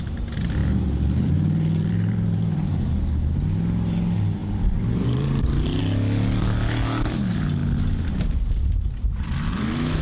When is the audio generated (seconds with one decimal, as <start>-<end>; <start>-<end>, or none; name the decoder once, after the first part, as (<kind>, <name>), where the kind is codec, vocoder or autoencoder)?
0.6-2.8 (vocoder, BigVGAN v2); 4.4-5.8